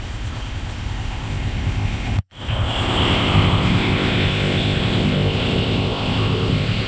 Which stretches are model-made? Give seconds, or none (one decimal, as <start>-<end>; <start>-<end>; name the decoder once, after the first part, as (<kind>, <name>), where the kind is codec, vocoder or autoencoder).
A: 0.0-6.9 (codec, ZipCodec)